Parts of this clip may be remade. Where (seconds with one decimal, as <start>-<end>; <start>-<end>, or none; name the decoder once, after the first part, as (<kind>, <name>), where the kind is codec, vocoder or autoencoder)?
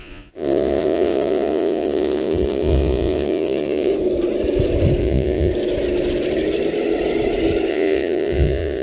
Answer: 0.0-3.9 (vocoder, Vocos); 5.0-5.5; 7.7-8.8